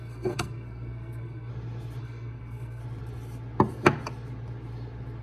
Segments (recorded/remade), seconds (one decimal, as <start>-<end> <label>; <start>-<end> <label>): 0.0-1.5 remade; 1.5-2.0 recorded; 2.0-2.8 remade; 2.8-5.2 recorded